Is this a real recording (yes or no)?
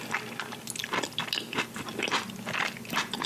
yes